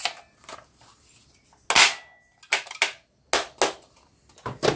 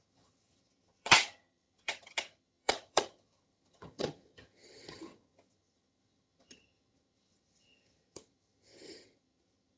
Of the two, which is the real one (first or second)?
first